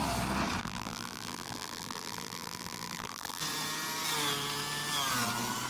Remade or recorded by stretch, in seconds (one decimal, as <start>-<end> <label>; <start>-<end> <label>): 0.0-0.6 recorded; 0.6-3.4 remade; 3.4-5.7 recorded